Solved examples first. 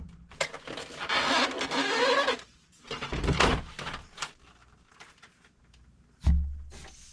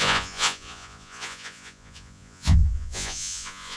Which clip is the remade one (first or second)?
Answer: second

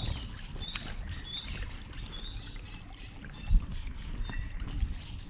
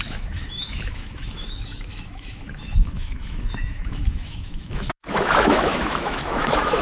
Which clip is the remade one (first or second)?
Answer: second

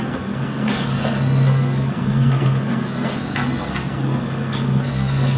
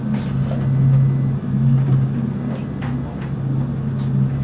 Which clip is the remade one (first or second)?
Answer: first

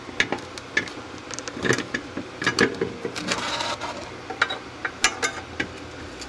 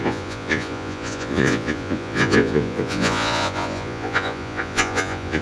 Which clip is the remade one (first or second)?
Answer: second